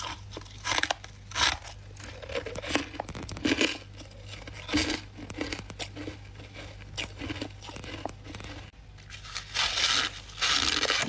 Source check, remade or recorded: recorded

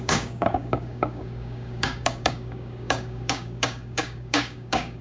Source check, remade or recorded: remade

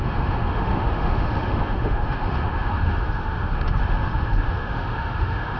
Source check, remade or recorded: remade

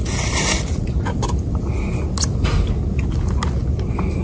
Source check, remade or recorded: recorded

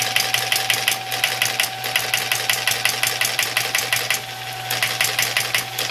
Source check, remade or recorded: recorded